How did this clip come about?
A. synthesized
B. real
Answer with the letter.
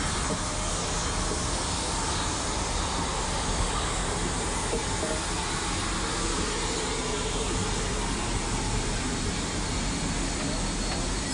B